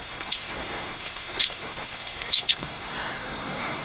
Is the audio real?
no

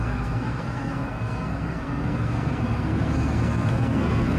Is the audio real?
no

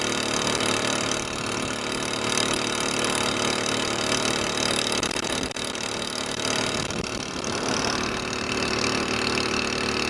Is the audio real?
yes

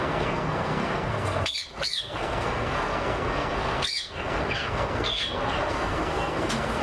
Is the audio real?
no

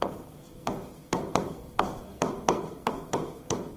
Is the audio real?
no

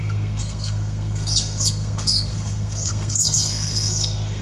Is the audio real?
no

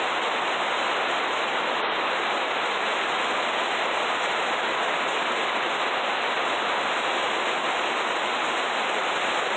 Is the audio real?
yes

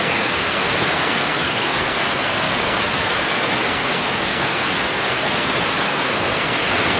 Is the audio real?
no